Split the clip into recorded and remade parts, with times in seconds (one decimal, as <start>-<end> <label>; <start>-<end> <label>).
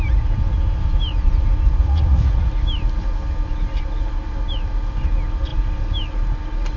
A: 0.0-1.8 recorded; 1.8-2.5 remade; 2.5-6.8 recorded